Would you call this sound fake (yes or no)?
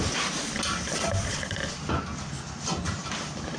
no